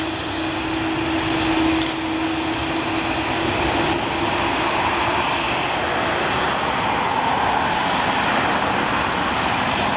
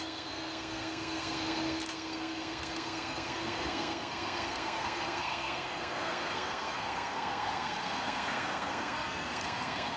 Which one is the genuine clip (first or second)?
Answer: first